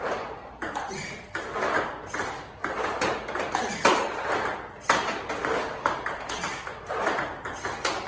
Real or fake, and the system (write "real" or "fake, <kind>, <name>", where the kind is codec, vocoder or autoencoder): real